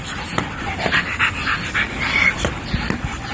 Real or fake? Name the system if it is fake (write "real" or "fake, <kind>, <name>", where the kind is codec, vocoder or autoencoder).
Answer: real